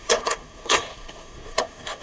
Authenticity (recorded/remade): remade